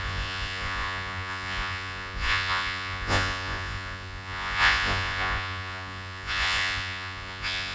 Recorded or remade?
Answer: remade